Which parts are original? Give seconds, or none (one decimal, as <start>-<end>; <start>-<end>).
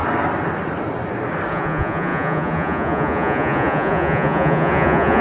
0.0-1.5